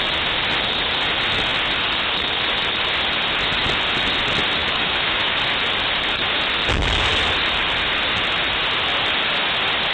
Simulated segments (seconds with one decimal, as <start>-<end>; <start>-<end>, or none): 4.6-5.4